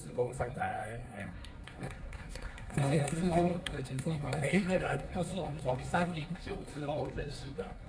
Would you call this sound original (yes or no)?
no